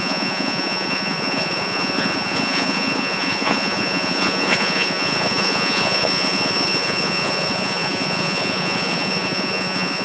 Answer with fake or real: fake